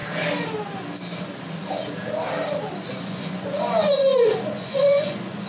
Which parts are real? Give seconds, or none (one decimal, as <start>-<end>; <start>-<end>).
0.0-3.0